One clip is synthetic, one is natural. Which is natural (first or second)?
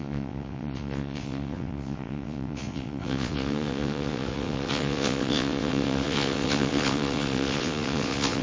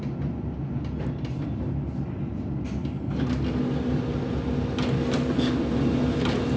second